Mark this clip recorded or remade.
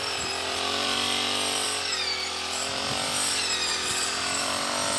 remade